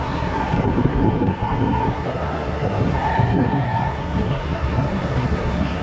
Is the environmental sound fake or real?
fake